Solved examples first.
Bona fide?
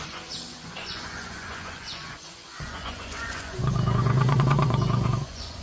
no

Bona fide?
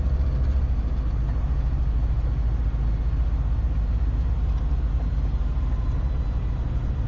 yes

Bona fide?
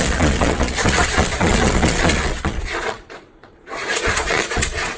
no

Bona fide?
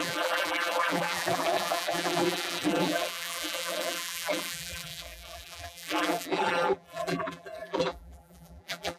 no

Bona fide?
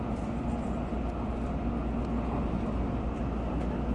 yes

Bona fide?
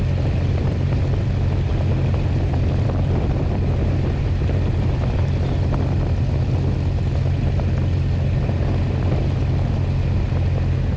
yes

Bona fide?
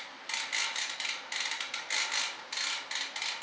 yes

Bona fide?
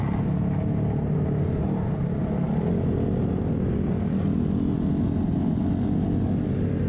yes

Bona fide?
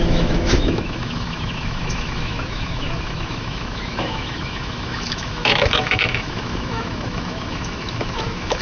no